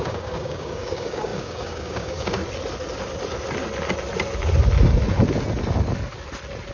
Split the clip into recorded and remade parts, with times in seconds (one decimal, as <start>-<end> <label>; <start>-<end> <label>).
0.0-2.4 remade; 2.4-6.7 recorded